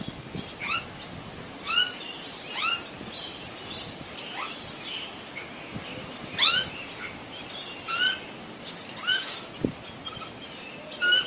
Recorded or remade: recorded